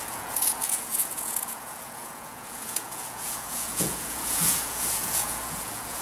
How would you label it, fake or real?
fake